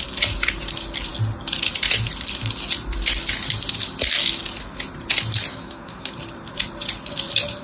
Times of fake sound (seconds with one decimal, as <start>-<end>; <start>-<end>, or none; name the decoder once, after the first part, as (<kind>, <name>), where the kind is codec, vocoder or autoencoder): 5.5-6.1 (autoencoder, DAC-VAE)